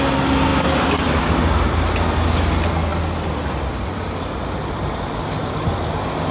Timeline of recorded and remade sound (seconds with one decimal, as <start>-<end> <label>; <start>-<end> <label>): 0.0-6.3 recorded